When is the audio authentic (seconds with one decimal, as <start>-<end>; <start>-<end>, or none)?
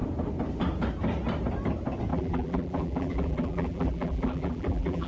0.0-2.1